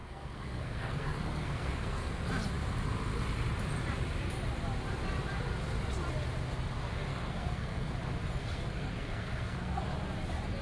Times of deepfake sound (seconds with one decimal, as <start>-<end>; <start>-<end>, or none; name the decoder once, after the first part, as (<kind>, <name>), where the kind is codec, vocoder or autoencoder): 0.0-2.1 (codec, SNAC); 7.1-7.9; 8.4-9.8